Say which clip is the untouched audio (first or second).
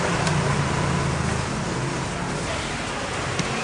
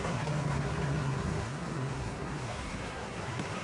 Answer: first